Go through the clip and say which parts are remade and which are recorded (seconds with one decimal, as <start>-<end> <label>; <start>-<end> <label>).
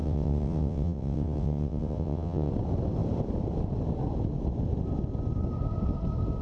0.0-2.5 remade; 2.5-6.4 recorded